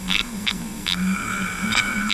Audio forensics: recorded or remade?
remade